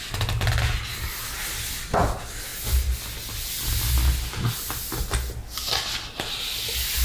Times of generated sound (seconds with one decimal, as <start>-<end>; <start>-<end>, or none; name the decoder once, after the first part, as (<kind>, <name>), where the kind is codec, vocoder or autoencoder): none